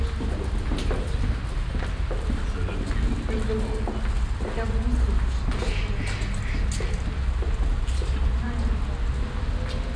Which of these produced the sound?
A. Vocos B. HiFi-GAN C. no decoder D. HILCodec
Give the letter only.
C